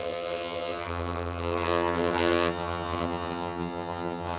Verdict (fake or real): fake